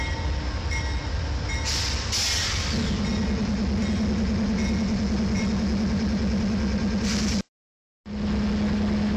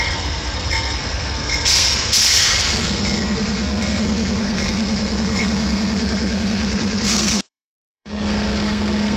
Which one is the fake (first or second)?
second